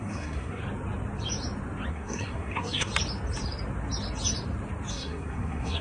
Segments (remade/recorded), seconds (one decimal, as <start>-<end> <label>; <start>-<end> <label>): 0.0-0.6 remade; 0.6-1.9 recorded; 1.9-2.9 remade; 2.9-4.9 recorded; 4.9-5.8 remade